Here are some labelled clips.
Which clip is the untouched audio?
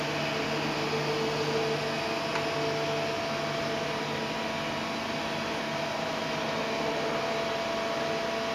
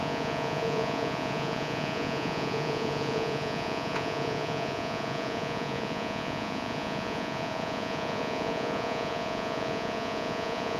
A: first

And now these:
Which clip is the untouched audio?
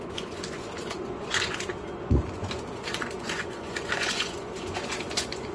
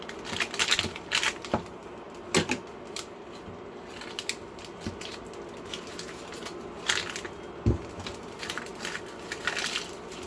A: second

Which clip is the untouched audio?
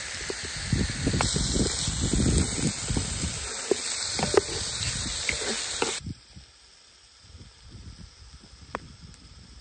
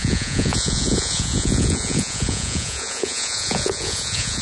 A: first